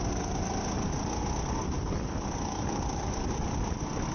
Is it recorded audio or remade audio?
recorded